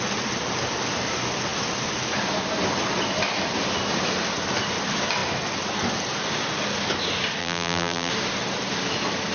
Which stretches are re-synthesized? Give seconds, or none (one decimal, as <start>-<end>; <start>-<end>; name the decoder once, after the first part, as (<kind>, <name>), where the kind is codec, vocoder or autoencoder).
7.4-8.1 (vocoder, BigVGAN v2)